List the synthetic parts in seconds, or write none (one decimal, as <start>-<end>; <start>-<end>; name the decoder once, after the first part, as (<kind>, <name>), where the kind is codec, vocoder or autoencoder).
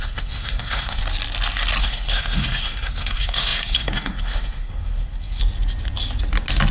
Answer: 0.0-1.0 (codec, SNAC); 1.8-5.4